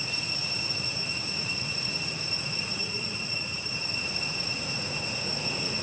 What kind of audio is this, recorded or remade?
remade